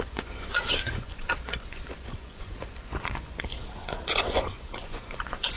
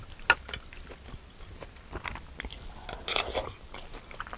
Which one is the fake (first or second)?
first